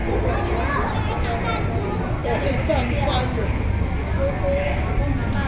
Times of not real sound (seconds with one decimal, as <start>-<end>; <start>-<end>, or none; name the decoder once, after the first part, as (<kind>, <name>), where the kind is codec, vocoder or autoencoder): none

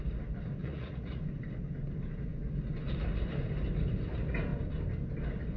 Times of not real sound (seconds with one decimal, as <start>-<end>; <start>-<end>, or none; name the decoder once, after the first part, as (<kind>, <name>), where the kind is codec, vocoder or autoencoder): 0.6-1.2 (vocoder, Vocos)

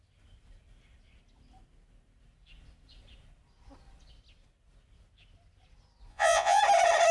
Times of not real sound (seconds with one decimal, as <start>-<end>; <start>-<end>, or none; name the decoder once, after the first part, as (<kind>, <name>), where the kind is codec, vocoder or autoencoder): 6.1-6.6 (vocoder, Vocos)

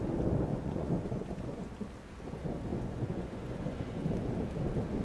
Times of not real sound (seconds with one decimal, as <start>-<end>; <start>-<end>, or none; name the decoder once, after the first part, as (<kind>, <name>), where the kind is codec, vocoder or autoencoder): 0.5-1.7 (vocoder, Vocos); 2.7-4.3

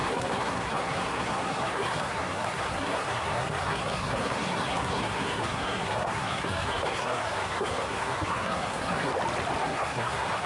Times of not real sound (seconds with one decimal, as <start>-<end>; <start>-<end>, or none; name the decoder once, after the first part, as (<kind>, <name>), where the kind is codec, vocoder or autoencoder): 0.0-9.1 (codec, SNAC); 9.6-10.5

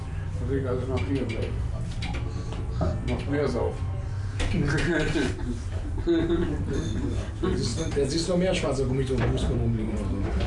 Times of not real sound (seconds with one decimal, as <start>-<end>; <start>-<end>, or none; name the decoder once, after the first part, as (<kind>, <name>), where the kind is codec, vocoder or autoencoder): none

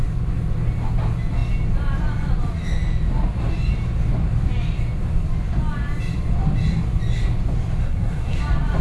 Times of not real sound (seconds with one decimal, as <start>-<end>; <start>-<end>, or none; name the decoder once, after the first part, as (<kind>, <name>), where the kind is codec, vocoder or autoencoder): 7.8-8.4 (codec, SNAC)

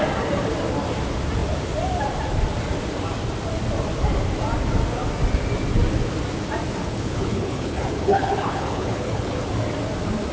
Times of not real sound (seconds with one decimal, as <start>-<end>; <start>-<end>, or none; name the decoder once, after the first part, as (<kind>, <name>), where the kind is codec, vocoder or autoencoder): 6.9-9.5 (codec, HILCodec)